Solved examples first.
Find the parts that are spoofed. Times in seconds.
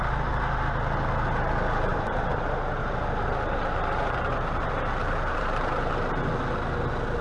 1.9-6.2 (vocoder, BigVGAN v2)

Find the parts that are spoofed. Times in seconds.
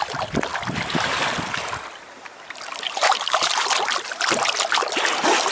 3.0-3.6 (vocoder, BigVGAN v2)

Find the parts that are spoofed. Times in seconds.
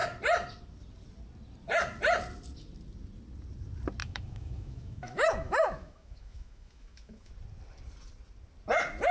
4.0-7.3 (autoencoder, DAC-VAE)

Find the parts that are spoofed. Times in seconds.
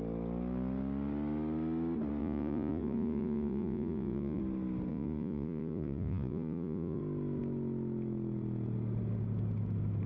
2.2-4.4 (vocoder, Vocos); 4.9-7.0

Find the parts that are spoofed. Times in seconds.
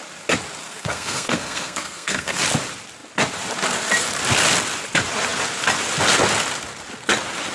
0.6-2.4 (codec, SNAC)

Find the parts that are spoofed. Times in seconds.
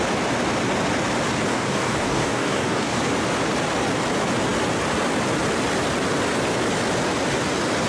1.5-3.0 (codec, DAC)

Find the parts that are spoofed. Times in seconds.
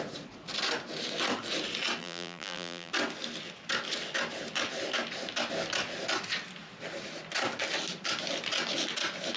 2.0-2.9 (vocoder, BigVGAN v2)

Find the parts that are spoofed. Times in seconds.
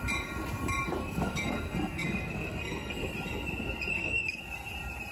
1.0-3.1 (codec, SNAC); 3.9-4.4